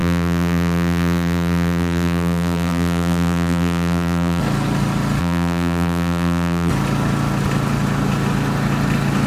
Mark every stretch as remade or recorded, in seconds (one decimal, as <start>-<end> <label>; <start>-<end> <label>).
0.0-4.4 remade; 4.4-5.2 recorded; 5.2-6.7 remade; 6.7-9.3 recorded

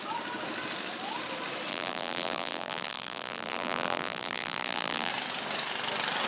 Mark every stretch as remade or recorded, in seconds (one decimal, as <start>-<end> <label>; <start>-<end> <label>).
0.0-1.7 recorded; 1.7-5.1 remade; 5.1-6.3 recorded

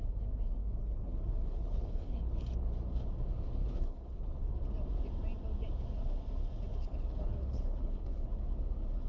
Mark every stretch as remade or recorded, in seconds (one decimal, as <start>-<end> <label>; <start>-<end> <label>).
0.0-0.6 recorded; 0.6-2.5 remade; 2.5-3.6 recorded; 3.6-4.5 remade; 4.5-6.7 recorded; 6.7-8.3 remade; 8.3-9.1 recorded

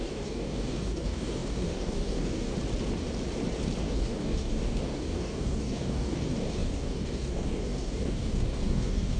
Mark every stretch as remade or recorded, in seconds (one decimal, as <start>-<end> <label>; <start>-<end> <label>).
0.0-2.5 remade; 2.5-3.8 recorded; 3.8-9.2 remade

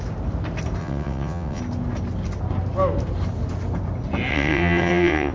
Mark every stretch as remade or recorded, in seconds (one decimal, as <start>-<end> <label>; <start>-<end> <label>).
0.0-0.8 recorded; 0.8-1.6 remade; 1.6-4.3 recorded; 4.3-5.3 remade

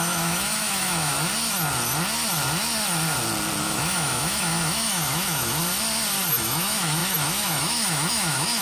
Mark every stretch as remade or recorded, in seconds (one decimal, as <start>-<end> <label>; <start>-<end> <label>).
0.0-1.1 remade; 1.1-3.6 recorded; 3.6-5.6 remade; 5.6-6.3 recorded; 6.3-8.6 remade